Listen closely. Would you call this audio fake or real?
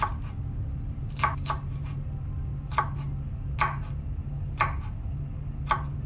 real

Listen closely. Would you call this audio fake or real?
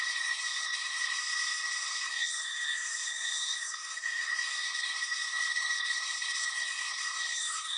fake